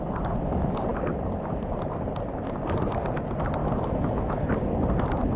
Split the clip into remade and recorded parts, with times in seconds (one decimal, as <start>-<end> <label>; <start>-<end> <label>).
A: 0.0-3.6 recorded; 3.6-4.5 remade; 4.5-5.4 recorded